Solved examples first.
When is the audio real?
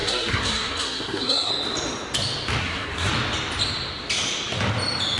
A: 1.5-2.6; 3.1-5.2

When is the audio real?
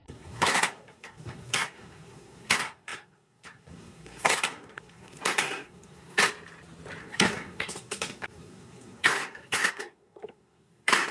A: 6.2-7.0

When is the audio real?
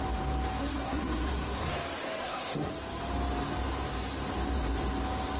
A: 0.0-0.7; 1.7-2.2; 2.7-5.4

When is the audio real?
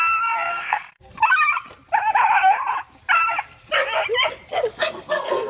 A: 0.0-0.5; 1.0-4.7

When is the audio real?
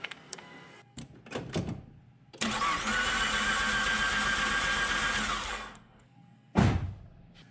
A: 1.0-5.5; 6.6-7.5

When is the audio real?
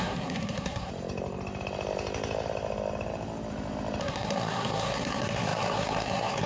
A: 0.9-4.0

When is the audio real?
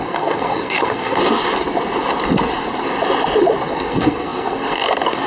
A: 1.2-3.7